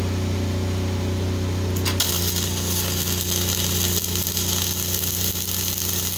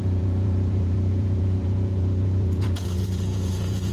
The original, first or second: first